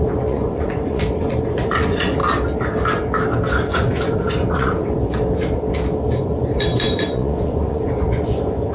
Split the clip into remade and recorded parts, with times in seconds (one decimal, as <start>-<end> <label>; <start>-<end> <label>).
0.0-2.2 remade; 2.2-3.5 recorded; 3.5-5.0 remade; 5.0-6.2 recorded; 6.2-8.7 remade